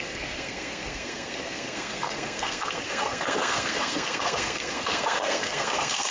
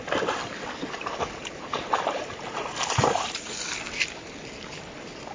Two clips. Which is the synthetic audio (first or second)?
first